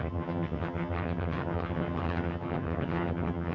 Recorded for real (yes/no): no